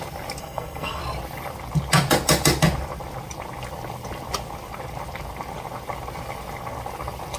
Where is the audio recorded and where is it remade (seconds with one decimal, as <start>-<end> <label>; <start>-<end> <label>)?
0.0-0.4 recorded; 0.4-1.0 remade; 1.0-7.4 recorded